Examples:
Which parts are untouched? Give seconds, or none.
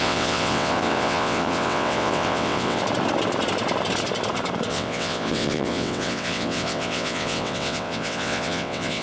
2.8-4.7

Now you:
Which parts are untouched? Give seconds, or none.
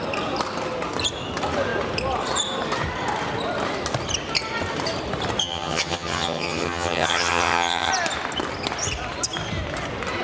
0.0-5.4; 7.9-10.2